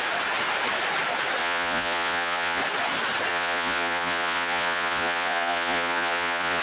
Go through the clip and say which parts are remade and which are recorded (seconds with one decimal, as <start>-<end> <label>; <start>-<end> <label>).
0.0-1.4 recorded; 1.4-2.6 remade; 2.6-3.3 recorded; 3.3-6.6 remade